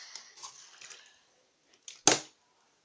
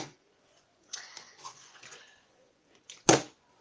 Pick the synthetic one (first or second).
second